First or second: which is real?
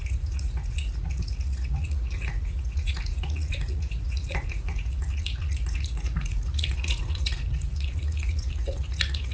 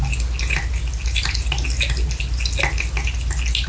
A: second